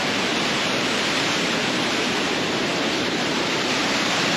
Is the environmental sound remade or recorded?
remade